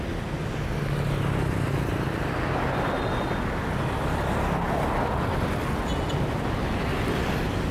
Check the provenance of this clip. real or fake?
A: real